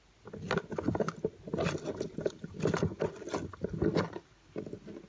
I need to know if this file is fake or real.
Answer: real